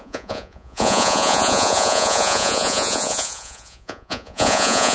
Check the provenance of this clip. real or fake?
fake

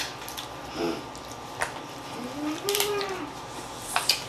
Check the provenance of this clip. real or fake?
real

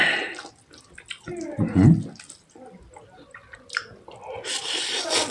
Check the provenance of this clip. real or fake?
real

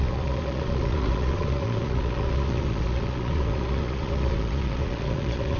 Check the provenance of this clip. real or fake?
fake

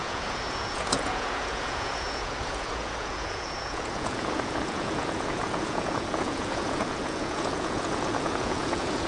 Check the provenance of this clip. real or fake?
fake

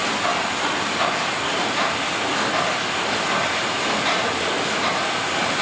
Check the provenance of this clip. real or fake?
real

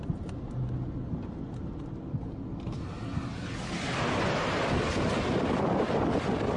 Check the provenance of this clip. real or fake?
real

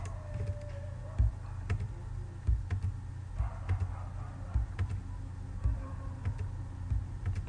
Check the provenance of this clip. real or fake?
real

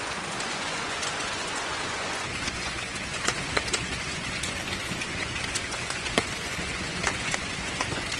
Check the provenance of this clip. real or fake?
fake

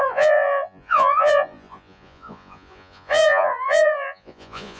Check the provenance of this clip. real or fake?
fake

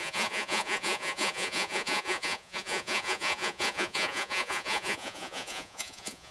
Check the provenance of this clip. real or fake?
fake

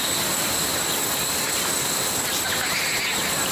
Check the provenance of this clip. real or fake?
real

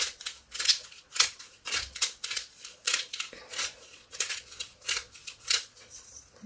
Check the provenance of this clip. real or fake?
fake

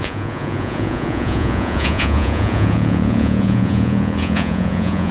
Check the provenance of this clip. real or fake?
fake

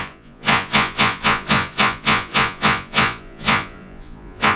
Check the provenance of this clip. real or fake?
fake